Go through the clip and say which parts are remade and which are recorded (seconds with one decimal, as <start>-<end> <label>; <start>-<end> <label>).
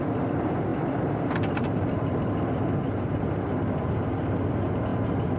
0.0-0.7 recorded; 0.7-3.9 remade; 3.9-4.9 recorded; 4.9-5.4 remade